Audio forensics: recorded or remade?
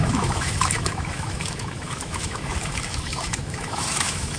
remade